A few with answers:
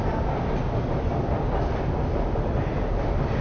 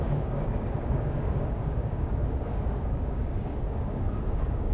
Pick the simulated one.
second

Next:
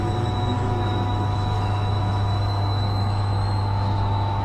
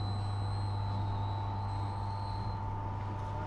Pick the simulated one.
first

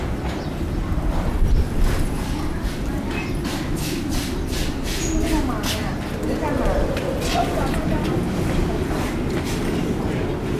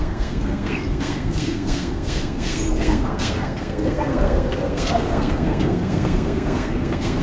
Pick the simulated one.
second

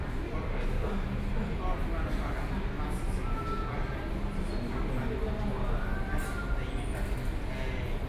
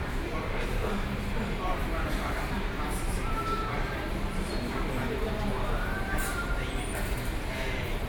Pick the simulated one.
second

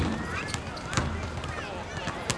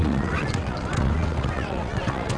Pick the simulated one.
second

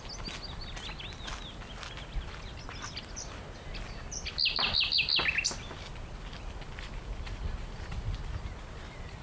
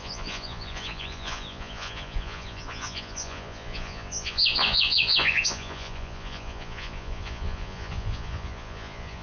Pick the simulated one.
second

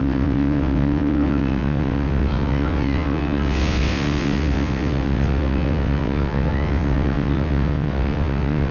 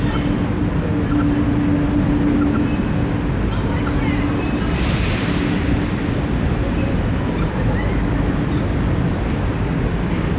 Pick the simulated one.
first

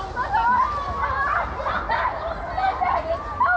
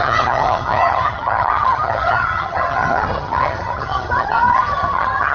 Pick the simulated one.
second